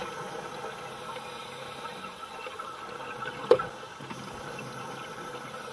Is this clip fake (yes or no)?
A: no